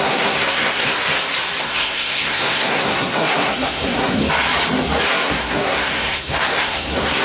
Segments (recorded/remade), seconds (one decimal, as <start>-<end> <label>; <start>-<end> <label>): 0.0-1.0 remade; 1.0-1.6 recorded; 1.6-4.2 remade; 4.2-5.1 recorded; 5.1-7.2 remade